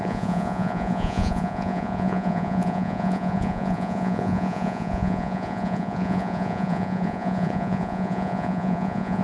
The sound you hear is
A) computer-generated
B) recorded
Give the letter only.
A